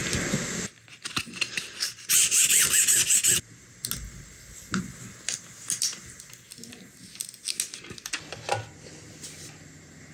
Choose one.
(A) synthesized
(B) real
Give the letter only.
B